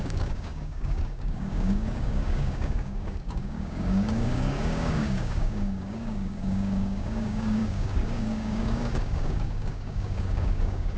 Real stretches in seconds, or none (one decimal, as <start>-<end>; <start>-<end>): none